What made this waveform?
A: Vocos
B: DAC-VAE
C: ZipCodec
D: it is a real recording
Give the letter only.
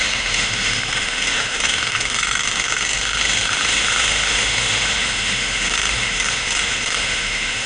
B